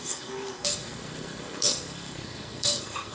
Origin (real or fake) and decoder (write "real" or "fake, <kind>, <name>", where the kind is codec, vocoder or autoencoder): fake, codec, SNAC